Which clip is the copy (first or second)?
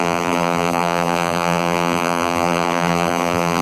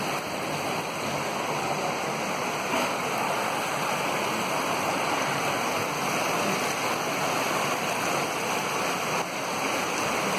first